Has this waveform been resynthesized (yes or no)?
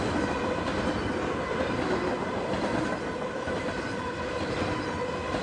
no